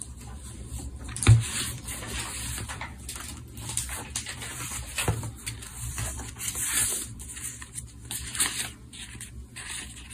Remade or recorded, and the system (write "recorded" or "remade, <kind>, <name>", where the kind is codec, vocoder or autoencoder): remade, vocoder, BigVGAN v2